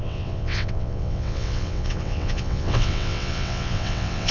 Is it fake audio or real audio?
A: fake